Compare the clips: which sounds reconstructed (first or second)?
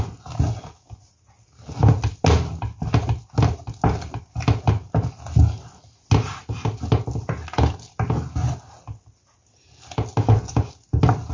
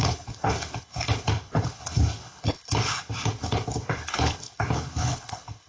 second